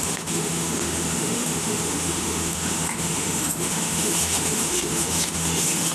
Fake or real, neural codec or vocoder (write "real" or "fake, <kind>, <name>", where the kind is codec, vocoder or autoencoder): fake, autoencoder, DAC-VAE